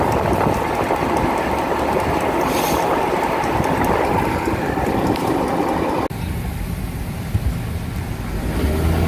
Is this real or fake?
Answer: real